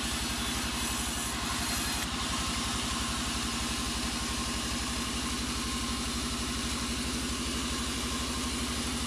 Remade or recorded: recorded